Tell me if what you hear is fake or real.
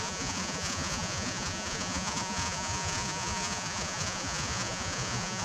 fake